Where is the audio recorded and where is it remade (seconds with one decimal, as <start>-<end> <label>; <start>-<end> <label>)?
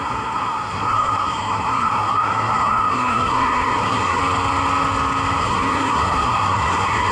0.0-4.2 remade; 4.2-5.4 recorded; 5.4-7.1 remade